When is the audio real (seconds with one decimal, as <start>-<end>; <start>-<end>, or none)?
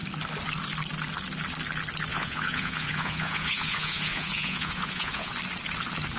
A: 0.0-2.1; 5.3-6.2